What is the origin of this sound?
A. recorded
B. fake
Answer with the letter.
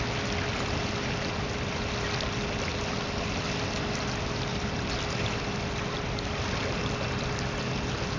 A